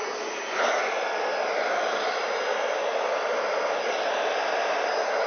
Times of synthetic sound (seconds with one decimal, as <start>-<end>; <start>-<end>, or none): none